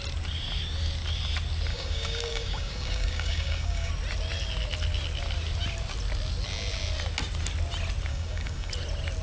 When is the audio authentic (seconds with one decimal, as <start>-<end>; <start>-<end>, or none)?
0.0-1.7; 3.9-8.1; 8.7-9.2